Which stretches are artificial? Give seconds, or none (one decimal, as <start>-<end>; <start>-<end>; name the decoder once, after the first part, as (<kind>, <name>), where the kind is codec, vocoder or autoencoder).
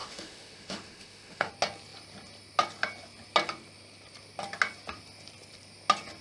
0.0-1.5 (autoencoder, DAC-VAE)